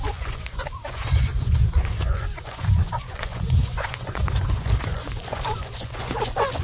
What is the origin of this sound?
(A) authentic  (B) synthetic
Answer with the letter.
B